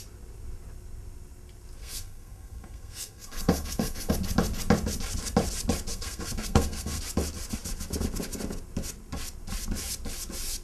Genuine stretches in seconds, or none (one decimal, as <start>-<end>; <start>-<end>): 0.0-1.8; 4.1-5.9; 7.0-10.6